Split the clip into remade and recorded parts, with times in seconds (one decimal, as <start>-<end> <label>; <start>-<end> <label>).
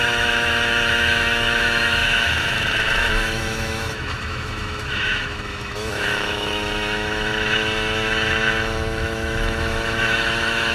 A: 0.0-10.7 remade